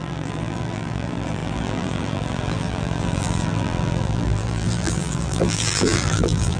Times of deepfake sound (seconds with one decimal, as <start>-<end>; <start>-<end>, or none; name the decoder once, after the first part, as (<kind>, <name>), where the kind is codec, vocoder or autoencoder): 0.0-6.6 (vocoder, BigVGAN v2)